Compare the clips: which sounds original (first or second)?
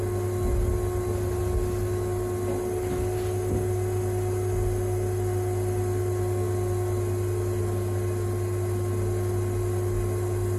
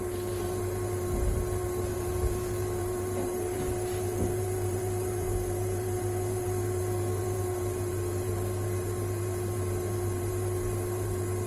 first